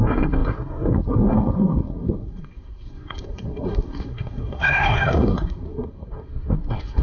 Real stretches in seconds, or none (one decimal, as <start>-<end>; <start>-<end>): none